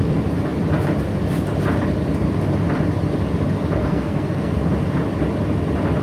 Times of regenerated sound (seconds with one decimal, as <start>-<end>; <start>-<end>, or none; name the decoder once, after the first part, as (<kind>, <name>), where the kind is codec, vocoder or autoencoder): 3.8-4.5 (codec, SNAC)